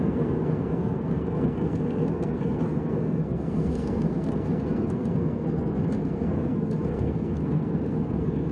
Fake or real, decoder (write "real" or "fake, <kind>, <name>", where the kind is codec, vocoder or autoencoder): fake, codec, SNAC